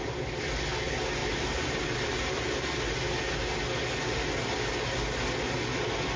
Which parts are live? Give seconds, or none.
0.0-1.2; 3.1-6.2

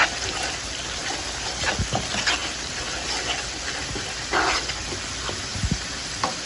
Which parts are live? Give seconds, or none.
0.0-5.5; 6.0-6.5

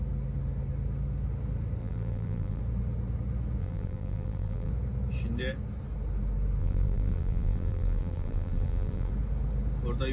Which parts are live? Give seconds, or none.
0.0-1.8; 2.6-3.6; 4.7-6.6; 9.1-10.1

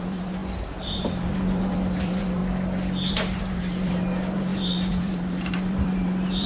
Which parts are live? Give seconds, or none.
2.4-3.1

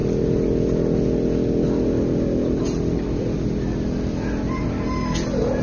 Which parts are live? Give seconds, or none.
0.0-5.6

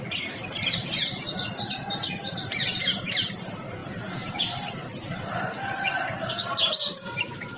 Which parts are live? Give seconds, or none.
none